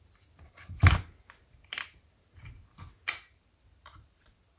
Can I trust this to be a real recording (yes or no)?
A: no